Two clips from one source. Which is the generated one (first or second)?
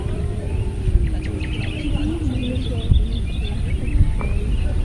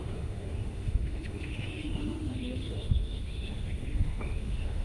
second